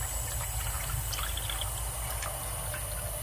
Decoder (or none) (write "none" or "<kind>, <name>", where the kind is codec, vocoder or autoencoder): none